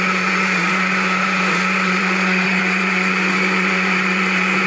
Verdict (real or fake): fake